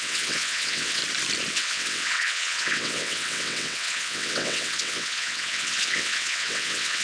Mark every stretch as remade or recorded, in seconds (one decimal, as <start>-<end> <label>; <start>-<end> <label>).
0.0-1.0 remade; 1.0-1.5 recorded; 1.5-7.0 remade